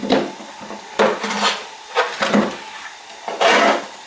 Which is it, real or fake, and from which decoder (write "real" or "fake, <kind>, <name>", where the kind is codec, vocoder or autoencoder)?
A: real